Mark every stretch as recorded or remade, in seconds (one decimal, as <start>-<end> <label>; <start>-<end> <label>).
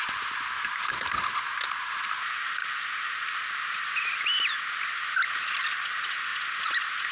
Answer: 0.0-7.1 recorded